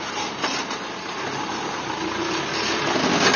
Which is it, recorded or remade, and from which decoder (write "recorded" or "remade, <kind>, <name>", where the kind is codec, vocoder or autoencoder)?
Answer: recorded